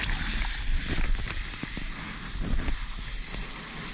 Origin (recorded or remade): recorded